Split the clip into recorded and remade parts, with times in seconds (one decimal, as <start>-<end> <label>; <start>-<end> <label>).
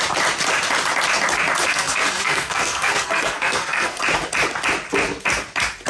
0.0-1.7 recorded; 1.7-4.0 remade; 4.0-5.9 recorded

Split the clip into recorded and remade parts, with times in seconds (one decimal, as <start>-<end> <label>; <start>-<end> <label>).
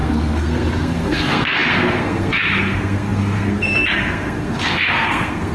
0.0-5.5 remade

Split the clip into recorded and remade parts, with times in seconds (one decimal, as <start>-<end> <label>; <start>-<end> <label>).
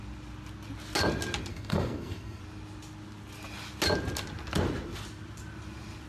0.0-1.5 recorded; 1.5-2.4 remade; 2.4-6.1 recorded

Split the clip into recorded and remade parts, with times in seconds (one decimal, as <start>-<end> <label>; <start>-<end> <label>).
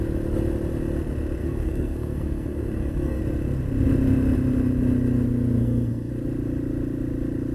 0.0-1.4 recorded; 1.4-3.2 remade; 3.2-5.6 recorded; 5.6-6.1 remade; 6.1-7.5 recorded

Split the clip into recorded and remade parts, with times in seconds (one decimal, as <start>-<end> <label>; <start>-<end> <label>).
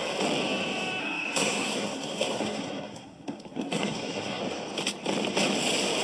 0.0-1.0 recorded; 1.0-4.4 remade; 4.4-6.0 recorded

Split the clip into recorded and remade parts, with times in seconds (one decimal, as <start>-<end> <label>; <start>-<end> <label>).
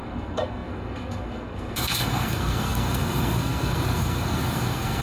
0.0-5.0 remade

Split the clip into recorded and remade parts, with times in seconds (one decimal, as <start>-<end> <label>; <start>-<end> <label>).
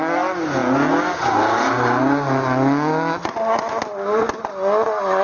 0.0-5.2 recorded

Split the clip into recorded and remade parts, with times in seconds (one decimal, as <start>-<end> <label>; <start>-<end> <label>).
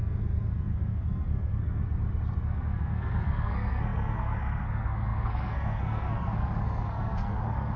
0.0-1.8 remade; 1.8-2.4 recorded; 2.4-7.8 remade